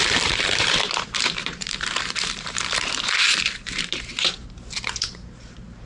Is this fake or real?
fake